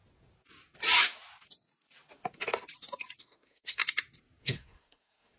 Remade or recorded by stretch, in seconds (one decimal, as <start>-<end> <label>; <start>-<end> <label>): 0.0-3.2 recorded; 3.2-3.8 remade; 3.8-4.4 recorded; 4.4-5.4 remade